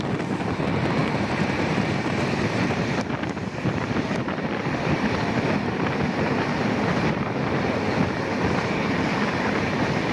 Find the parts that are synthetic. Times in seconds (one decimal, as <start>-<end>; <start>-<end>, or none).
1.0-3.1